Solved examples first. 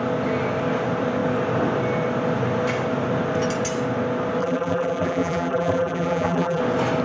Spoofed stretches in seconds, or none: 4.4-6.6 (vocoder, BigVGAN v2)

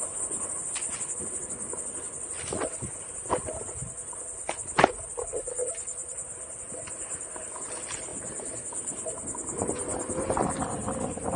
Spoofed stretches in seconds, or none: none